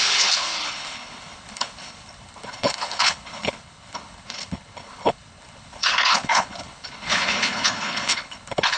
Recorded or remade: remade